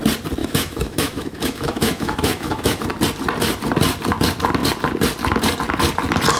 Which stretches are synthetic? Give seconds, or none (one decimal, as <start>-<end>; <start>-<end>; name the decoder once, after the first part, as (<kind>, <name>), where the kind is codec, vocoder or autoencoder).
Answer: 0.4-2.8 (autoencoder, DAC-VAE)